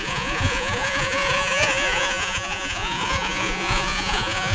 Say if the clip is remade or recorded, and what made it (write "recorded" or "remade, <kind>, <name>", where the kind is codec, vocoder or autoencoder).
remade, vocoder, Vocos